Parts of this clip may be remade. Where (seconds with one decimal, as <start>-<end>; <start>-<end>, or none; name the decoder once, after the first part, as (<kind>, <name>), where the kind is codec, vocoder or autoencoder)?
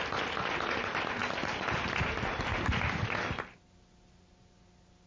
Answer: none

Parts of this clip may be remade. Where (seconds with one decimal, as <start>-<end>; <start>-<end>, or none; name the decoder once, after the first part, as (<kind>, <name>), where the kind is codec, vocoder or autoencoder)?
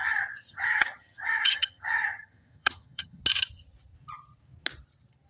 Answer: 0.0-3.2 (vocoder, HiFi-GAN)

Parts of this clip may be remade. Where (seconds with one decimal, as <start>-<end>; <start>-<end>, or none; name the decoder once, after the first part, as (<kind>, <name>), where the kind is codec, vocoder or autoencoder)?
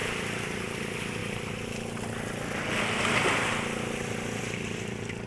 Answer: none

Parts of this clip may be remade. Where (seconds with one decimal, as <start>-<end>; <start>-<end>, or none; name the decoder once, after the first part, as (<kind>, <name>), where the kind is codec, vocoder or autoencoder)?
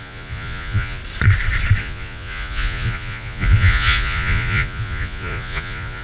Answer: 0.0-1.0 (vocoder, Vocos); 1.8-6.0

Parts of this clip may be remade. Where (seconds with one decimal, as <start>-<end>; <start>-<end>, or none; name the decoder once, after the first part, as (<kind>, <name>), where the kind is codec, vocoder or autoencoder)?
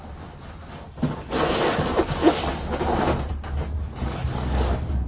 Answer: 3.8-5.1 (codec, DAC)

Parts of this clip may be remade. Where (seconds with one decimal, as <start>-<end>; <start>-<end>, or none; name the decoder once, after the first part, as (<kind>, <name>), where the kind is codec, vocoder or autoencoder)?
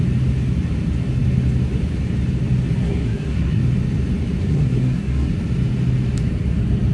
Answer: 2.8-3.6 (codec, SNAC); 4.4-5.3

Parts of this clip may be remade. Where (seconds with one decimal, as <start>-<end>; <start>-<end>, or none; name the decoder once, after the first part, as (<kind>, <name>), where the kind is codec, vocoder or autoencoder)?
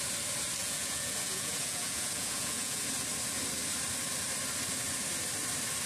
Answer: 0.6-2.8 (vocoder, Vocos)